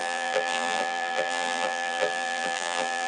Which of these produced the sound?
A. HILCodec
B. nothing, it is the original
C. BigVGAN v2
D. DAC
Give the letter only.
C